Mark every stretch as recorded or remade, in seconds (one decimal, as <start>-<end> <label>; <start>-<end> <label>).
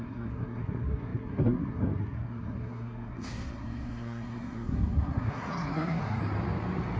0.0-6.2 remade; 6.2-7.0 recorded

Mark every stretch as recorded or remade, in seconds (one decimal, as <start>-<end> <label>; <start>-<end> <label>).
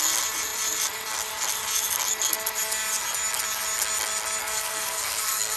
0.0-4.4 recorded; 4.4-5.6 remade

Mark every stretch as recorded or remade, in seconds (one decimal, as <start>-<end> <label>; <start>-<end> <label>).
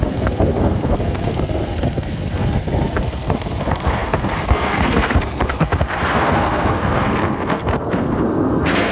0.0-8.9 remade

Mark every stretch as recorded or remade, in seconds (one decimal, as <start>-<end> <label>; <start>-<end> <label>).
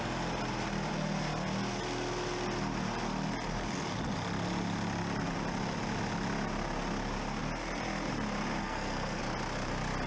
0.0-8.6 recorded; 8.6-9.2 remade; 9.2-10.1 recorded